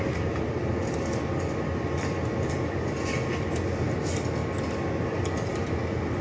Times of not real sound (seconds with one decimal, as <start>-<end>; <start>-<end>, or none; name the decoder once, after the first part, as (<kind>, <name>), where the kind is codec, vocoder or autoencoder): none